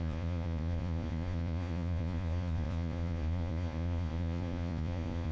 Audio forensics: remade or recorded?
remade